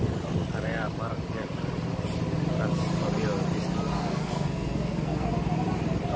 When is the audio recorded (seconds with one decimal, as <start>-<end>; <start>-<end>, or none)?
0.0-3.9; 5.3-6.2